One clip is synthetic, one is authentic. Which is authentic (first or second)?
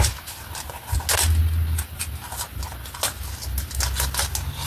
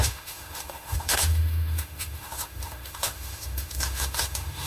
first